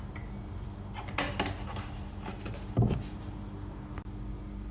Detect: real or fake real